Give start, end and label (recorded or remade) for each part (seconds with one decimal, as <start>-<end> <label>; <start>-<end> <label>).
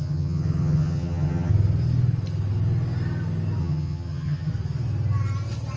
0.0-1.5 remade; 1.5-3.6 recorded; 3.6-4.5 remade; 4.5-5.8 recorded